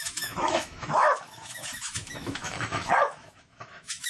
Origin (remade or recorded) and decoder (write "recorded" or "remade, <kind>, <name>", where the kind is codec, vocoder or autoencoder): remade, autoencoder, DAC-VAE